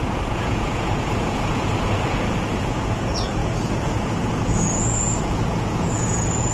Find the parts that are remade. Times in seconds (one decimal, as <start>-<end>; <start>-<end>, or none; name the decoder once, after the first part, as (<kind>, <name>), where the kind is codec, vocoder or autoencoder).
0.0-6.5 (vocoder, Vocos)